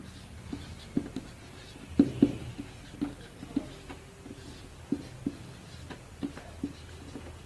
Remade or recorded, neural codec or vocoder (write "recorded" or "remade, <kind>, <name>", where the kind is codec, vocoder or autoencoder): recorded